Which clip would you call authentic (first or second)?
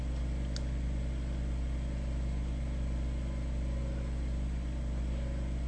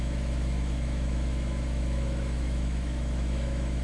first